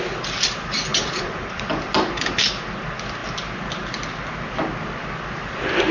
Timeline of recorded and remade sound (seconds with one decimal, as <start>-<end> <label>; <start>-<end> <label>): 0.0-0.9 recorded; 0.9-1.7 remade; 1.7-5.9 recorded

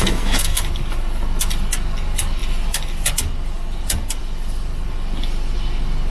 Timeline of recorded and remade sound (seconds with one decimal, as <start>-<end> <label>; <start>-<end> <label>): 0.0-0.6 remade; 0.6-6.1 recorded